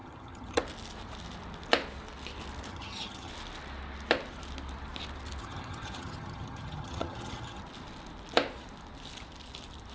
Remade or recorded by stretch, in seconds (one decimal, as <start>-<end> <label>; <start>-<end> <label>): 0.0-0.6 remade; 0.6-2.7 recorded; 2.7-3.3 remade; 3.3-5.4 recorded; 5.4-7.6 remade; 7.6-9.9 recorded